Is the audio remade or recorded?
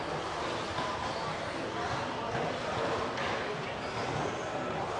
recorded